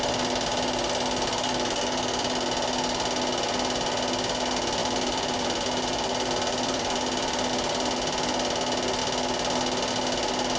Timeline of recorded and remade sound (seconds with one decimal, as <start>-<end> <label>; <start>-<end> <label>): 0.0-4.8 recorded; 4.8-7.5 remade; 7.5-10.6 recorded